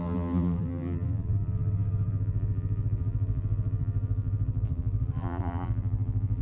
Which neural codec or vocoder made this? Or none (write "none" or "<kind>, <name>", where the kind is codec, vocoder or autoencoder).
vocoder, BigVGAN v2